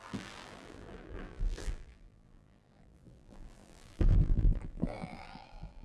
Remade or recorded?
remade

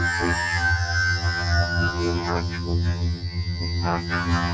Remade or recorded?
remade